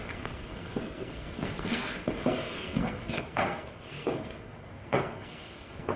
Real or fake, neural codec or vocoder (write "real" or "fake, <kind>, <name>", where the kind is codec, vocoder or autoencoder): fake, codec, SNAC